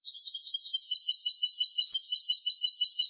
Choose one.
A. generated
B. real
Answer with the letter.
A